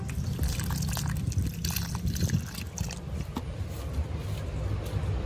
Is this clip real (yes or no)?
yes